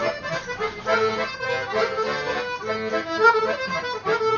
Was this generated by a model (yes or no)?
no